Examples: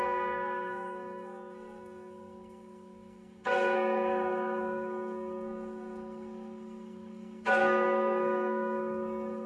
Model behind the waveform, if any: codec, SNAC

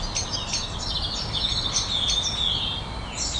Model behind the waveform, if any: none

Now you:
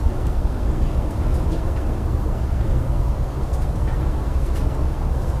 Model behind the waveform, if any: codec, SNAC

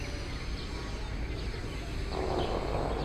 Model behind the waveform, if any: none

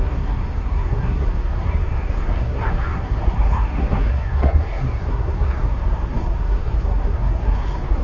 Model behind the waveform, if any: codec, SNAC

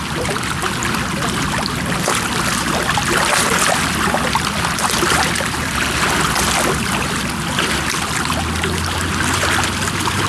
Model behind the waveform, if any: none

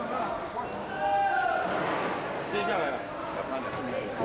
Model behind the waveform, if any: none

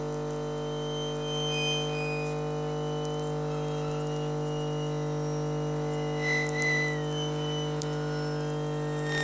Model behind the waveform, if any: none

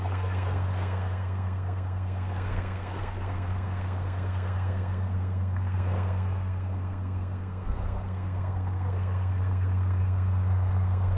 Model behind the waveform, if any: codec, SNAC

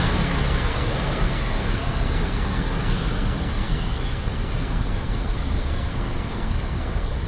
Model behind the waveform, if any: codec, SNAC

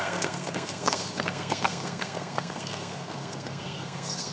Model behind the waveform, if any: codec, SNAC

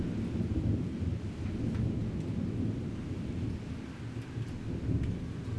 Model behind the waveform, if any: none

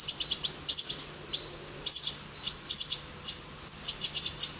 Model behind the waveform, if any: none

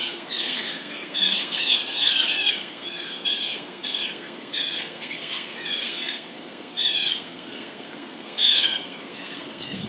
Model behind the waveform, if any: codec, SNAC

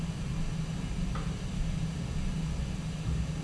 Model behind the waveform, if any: none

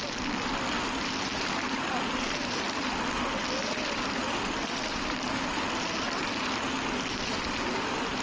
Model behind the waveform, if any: none